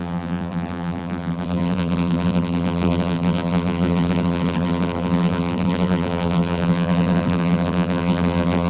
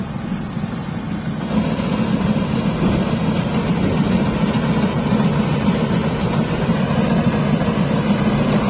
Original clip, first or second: second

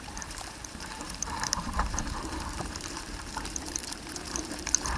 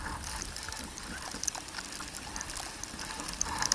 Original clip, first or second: second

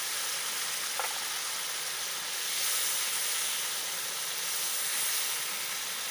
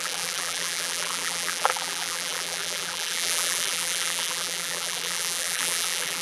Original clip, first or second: first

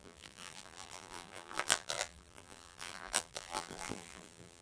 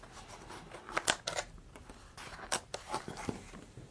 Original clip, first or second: second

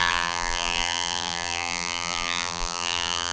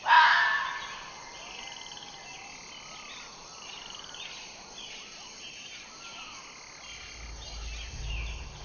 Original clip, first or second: second